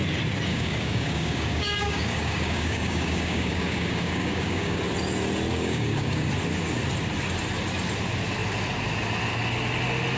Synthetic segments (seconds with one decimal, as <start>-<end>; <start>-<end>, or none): 0.5-4.8; 5.5-6.3